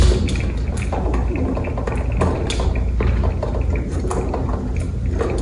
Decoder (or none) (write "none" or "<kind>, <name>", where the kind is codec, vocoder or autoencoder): none